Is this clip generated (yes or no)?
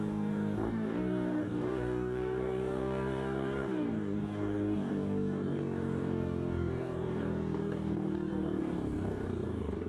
yes